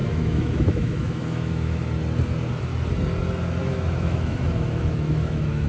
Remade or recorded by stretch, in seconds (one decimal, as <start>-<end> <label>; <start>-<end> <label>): 0.0-1.8 remade; 1.8-3.6 recorded; 3.6-5.7 remade